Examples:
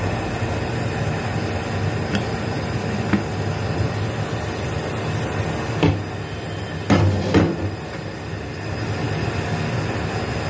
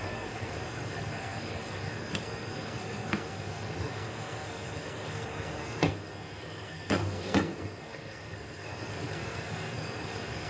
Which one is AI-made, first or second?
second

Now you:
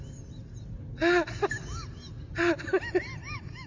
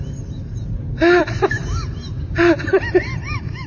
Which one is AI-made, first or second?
second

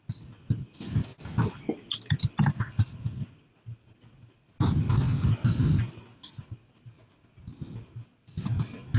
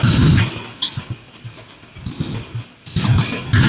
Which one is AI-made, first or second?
second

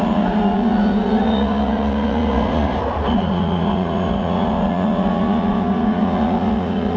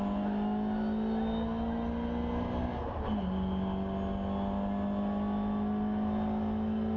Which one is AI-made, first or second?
first